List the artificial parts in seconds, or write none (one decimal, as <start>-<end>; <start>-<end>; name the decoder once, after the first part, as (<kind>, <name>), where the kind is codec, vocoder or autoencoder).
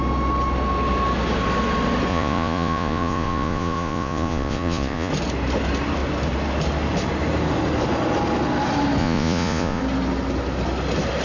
2.1-5.1 (vocoder, Vocos); 9.0-9.8